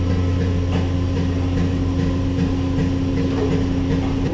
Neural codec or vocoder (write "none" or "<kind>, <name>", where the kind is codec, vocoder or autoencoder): none